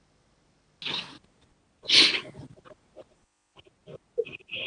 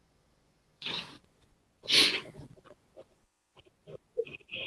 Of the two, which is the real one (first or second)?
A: first